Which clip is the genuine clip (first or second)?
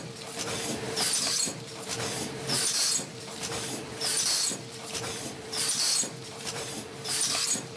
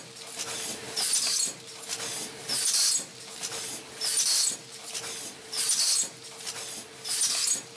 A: second